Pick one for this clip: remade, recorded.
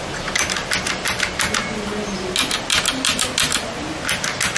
recorded